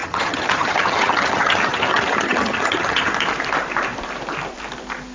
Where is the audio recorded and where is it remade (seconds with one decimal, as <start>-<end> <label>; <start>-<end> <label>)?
0.0-3.1 remade; 3.1-5.1 recorded